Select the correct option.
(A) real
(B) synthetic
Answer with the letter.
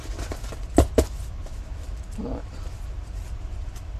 A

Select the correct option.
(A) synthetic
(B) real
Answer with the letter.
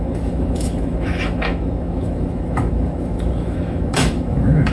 A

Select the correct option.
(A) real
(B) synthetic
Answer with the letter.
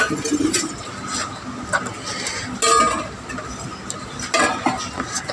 A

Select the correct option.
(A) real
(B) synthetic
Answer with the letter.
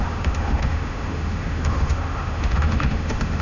B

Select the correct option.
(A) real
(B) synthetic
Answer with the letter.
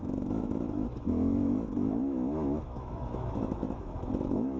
B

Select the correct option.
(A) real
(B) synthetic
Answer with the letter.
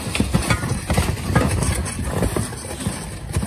A